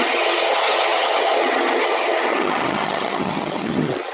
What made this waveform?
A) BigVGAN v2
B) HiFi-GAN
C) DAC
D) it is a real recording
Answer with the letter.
B